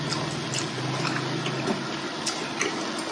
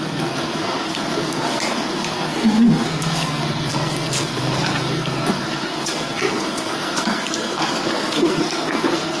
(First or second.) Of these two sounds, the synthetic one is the second